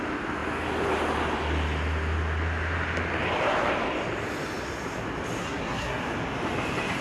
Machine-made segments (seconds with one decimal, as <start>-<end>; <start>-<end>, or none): 5.4-6.0

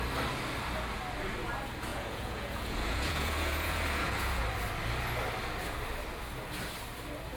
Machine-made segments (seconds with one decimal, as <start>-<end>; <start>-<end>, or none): 1.9-4.4

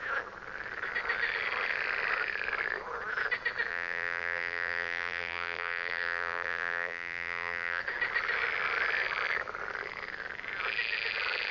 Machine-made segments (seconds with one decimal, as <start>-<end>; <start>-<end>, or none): 3.7-7.8

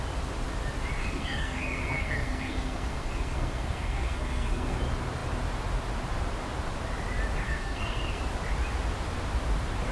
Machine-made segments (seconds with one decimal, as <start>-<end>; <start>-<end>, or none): 1.0-4.8; 7.4-8.2